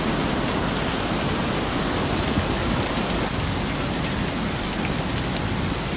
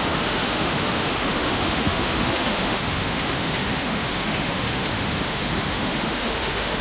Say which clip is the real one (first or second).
first